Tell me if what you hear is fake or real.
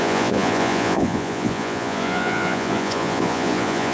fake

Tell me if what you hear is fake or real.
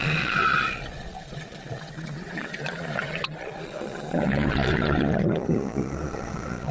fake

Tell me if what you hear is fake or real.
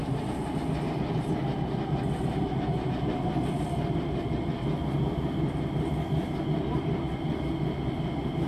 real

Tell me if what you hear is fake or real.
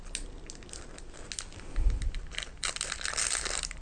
real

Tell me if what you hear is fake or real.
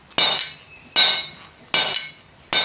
real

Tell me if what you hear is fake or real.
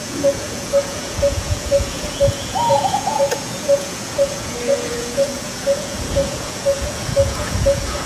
fake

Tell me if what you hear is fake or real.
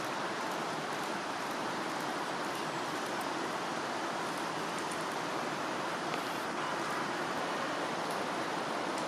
fake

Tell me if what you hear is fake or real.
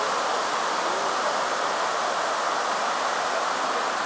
real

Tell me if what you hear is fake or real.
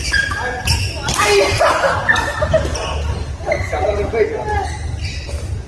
real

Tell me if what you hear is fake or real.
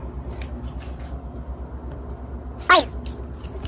real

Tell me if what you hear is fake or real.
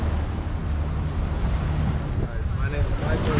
real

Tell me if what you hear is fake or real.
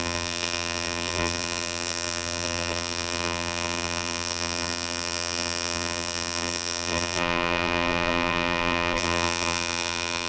fake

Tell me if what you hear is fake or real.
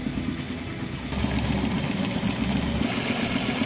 real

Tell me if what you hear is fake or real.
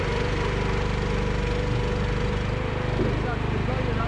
real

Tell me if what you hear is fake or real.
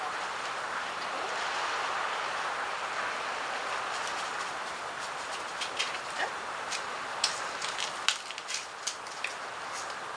real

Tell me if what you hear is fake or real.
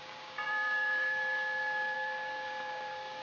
fake